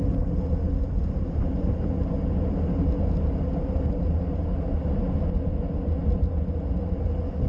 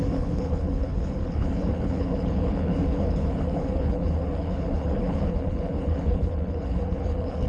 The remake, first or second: second